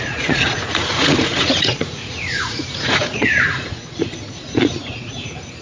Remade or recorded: remade